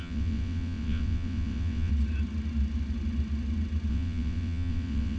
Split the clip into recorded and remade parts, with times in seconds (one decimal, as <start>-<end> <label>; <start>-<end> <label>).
0.0-1.9 remade; 1.9-3.9 recorded; 3.9-5.2 remade